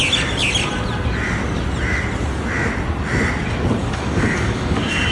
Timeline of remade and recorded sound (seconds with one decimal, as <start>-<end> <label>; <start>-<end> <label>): 0.0-3.8 recorded; 3.8-5.1 remade